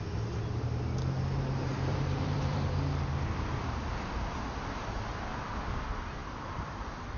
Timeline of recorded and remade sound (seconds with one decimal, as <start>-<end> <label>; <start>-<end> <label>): 0.0-1.6 recorded; 1.6-2.7 remade; 2.7-6.2 recorded; 6.2-7.2 remade